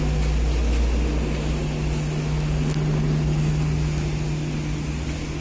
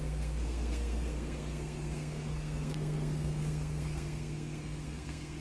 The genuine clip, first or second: first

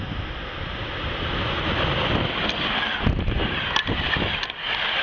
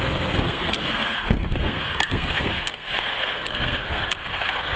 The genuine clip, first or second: first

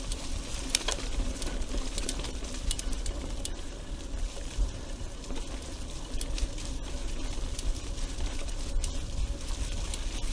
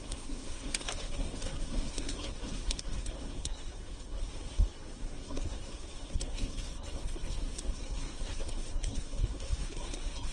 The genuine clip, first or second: first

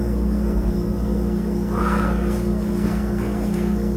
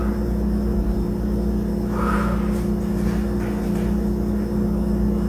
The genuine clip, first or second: second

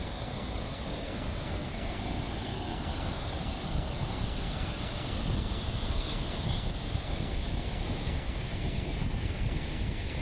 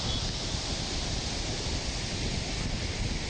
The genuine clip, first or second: second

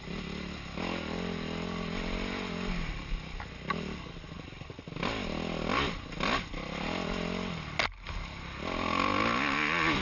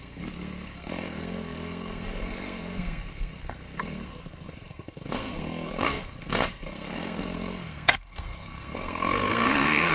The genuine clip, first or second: first